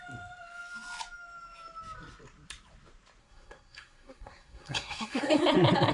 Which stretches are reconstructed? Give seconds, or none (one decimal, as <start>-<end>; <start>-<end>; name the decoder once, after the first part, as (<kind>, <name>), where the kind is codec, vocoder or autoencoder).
3.2-5.4 (codec, SNAC)